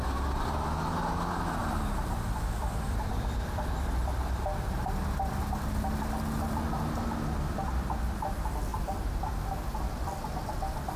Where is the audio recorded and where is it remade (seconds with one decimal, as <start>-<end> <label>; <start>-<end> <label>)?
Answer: 0.0-1.6 recorded; 1.6-6.8 remade; 6.8-8.7 recorded; 8.7-9.4 remade; 9.4-11.0 recorded